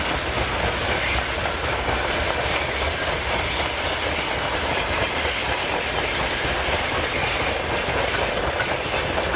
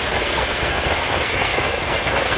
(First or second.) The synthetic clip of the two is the second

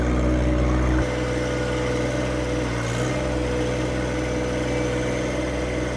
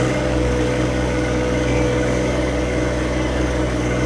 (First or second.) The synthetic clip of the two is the second